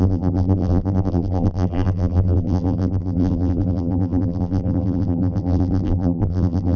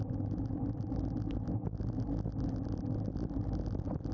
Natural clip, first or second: second